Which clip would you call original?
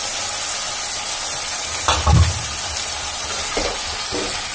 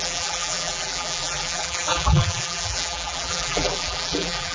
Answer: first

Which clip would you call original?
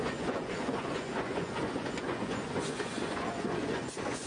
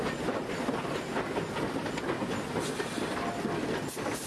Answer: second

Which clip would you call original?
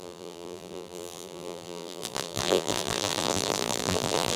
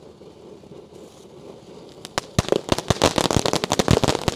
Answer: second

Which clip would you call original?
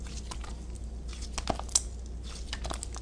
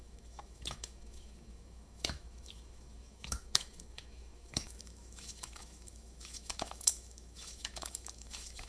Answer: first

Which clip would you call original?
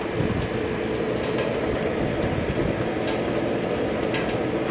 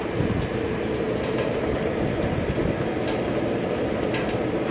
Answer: first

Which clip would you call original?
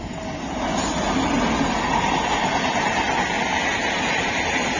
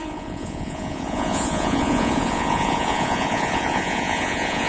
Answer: first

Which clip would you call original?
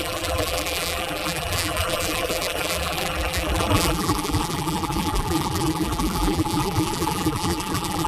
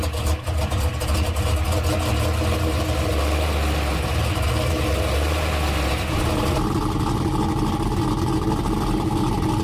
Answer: second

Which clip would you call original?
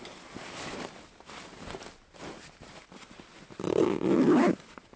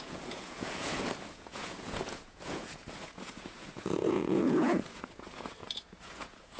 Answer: first